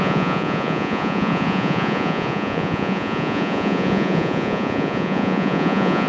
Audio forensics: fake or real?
fake